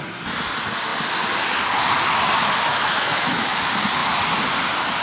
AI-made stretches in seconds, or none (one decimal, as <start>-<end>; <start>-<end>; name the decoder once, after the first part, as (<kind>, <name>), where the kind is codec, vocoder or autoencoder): 2.7-3.6 (autoencoder, DAC-VAE)